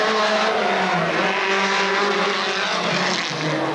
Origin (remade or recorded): recorded